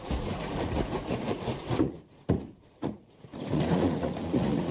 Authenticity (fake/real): fake